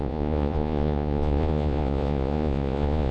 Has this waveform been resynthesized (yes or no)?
yes